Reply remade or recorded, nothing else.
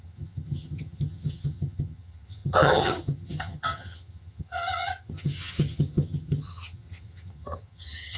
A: remade